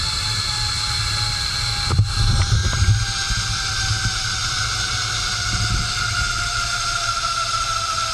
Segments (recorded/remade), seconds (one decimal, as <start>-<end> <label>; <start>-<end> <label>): 0.0-2.6 remade; 2.6-3.5 recorded; 3.5-4.4 remade; 4.4-5.3 recorded; 5.3-8.1 remade

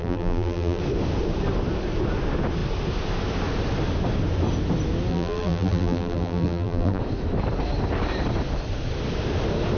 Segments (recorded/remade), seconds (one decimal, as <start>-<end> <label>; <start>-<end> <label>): 0.0-0.8 remade; 0.8-5.1 recorded; 5.1-7.0 remade; 7.0-9.8 recorded

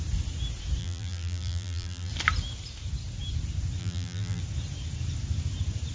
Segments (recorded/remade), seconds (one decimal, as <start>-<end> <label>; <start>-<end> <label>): 0.0-0.8 recorded; 0.8-2.1 remade; 2.1-3.8 recorded; 3.8-4.4 remade; 4.4-5.9 recorded

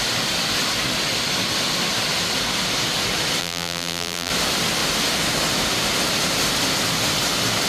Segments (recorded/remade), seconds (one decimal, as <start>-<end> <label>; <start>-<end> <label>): 0.0-3.4 recorded; 3.4-4.3 remade; 4.3-7.7 recorded